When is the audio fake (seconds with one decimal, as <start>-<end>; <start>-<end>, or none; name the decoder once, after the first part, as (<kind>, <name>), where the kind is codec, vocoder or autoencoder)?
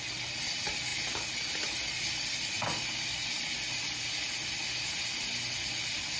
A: none